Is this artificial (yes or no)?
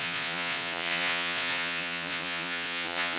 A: yes